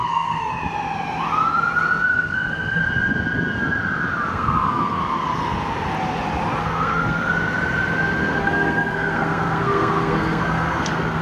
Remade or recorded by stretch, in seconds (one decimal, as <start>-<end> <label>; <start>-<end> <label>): 0.0-0.5 remade; 0.5-2.1 recorded; 2.1-2.8 remade; 2.8-4.3 recorded; 4.3-5.0 remade; 5.0-6.6 recorded; 6.6-7.3 remade; 7.3-8.4 recorded; 8.4-11.2 remade